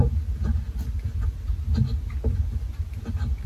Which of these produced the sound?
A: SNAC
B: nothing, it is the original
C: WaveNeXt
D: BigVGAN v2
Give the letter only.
B